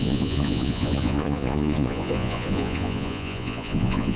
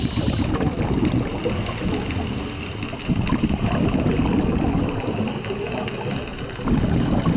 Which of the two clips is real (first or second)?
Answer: second